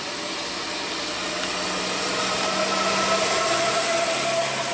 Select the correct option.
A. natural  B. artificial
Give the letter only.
A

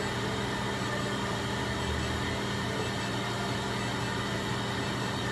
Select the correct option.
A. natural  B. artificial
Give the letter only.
A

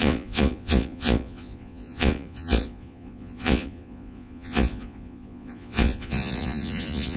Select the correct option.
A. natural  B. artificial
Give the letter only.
B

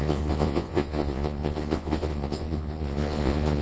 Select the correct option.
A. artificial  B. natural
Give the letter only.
A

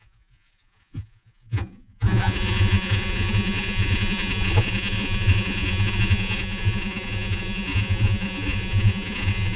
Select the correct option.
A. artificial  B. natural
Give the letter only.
A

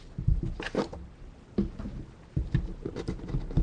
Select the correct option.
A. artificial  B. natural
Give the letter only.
B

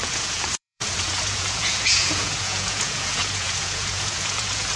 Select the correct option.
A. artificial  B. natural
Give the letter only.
A